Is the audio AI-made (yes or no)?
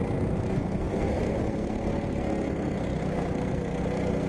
yes